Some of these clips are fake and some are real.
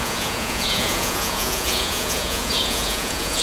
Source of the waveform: fake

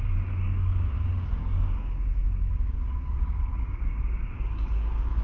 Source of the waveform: fake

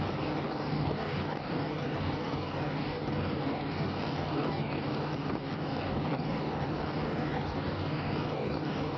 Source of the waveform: fake